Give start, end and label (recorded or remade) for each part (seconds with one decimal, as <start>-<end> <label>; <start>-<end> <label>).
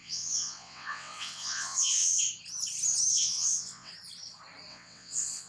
0.0-2.2 remade; 2.2-3.1 recorded; 3.1-3.9 remade; 3.9-4.7 recorded; 4.7-5.5 remade